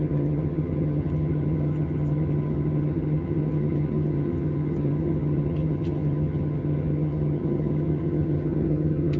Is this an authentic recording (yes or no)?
no